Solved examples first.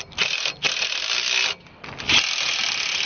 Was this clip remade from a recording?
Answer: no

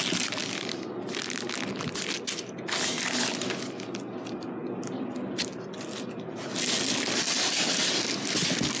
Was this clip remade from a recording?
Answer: no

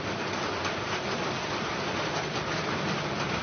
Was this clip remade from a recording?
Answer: yes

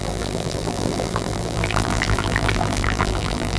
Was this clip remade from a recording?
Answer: yes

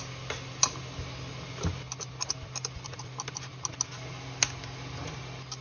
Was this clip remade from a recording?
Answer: no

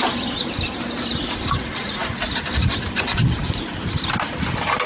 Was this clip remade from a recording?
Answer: no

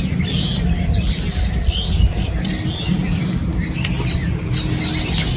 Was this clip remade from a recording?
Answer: no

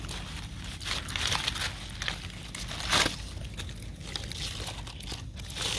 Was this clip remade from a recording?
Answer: no